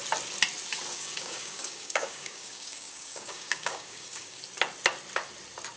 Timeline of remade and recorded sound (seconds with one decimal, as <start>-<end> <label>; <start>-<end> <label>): 0.0-0.9 recorded; 0.9-4.4 remade; 4.4-5.8 recorded